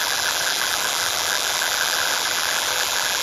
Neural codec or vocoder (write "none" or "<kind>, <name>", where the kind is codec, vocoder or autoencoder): vocoder, BigVGAN v2